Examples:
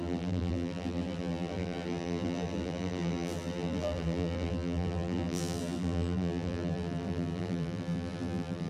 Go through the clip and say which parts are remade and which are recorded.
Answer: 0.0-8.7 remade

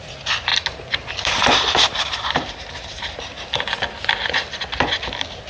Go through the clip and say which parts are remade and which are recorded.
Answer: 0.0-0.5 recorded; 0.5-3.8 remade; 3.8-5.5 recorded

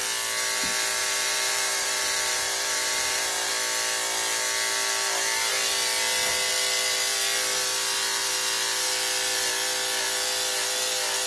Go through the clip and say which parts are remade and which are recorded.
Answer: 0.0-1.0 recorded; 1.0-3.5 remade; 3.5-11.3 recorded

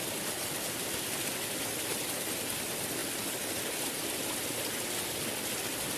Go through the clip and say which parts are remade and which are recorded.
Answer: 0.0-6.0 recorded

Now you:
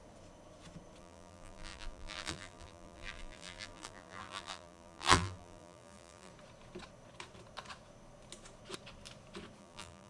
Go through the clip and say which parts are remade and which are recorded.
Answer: 0.0-1.0 recorded; 1.0-6.3 remade; 6.3-9.6 recorded; 9.6-10.1 remade

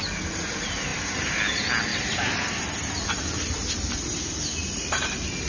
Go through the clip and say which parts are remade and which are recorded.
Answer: 0.0-0.9 recorded; 0.9-1.4 remade; 1.4-1.9 recorded; 1.9-2.5 remade; 2.5-4.6 recorded; 4.6-5.1 remade; 5.1-5.5 recorded